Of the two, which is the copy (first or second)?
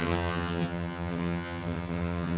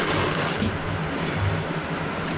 first